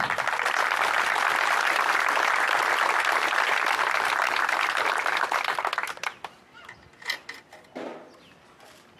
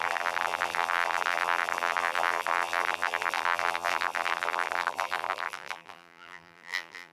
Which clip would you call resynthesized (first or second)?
second